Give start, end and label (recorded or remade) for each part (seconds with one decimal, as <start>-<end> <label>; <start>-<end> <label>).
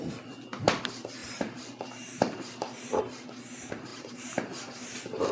0.0-1.2 recorded; 1.2-3.0 remade; 3.0-3.9 recorded; 3.9-5.3 remade